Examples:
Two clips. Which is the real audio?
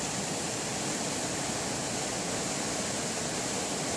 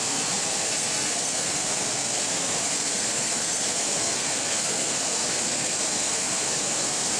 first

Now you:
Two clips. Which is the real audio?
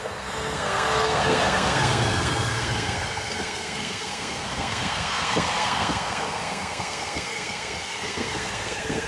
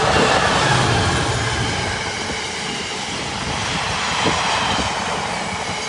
second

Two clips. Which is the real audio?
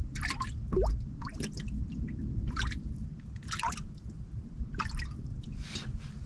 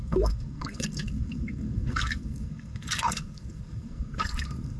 first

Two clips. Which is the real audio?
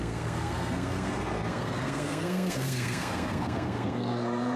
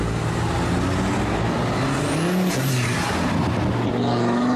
second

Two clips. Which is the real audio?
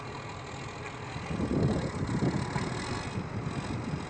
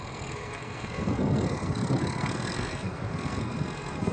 first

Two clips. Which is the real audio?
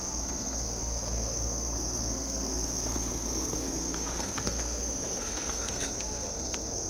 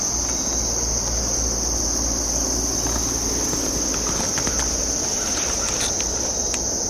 second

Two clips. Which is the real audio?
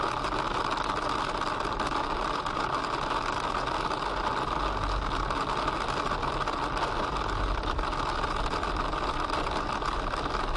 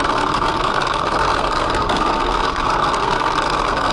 first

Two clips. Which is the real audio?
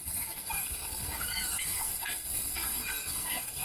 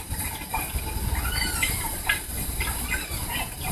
second